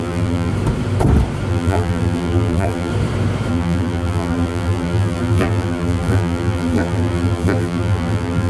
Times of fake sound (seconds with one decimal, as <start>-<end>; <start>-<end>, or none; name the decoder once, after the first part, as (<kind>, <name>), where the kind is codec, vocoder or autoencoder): 0.0-0.5 (vocoder, BigVGAN v2); 1.5-2.9; 3.5-8.5